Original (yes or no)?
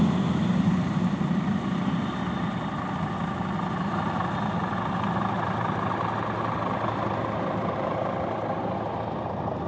yes